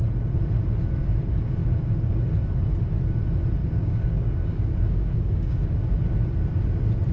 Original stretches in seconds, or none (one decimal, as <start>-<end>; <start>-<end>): 0.0-1.6; 2.2-3.6; 6.0-7.1